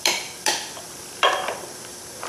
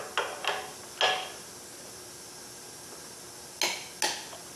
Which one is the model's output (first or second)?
first